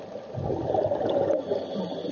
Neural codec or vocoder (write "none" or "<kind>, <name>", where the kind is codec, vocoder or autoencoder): none